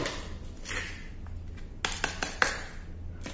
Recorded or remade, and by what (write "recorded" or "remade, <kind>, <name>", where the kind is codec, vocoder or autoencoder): recorded